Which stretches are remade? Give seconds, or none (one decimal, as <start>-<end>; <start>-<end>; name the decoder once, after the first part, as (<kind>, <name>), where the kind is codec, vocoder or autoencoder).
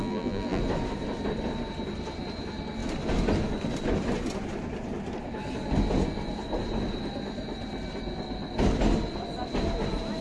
0.0-0.6 (vocoder, BigVGAN v2)